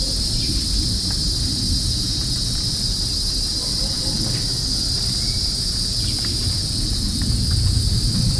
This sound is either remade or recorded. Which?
recorded